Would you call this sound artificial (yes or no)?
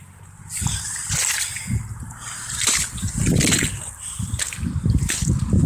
no